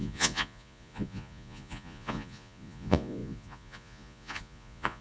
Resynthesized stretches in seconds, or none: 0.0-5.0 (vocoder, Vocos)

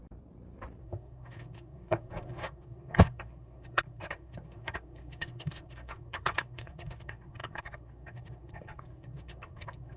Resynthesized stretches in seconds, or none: 0.8-10.0 (codec, SNAC)

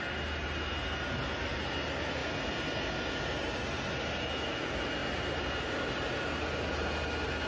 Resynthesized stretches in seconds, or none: 2.2-3.1 (vocoder, BigVGAN v2)

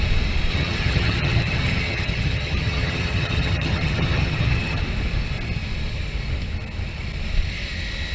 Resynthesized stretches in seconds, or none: 0.5-4.8 (vocoder, HiFi-GAN)